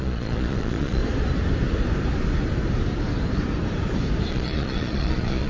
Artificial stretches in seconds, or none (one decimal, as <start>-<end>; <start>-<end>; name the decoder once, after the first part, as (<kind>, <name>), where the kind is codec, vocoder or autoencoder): 0.0-1.0 (vocoder, Vocos); 4.3-5.5